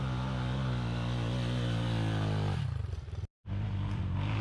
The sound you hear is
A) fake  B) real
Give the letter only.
B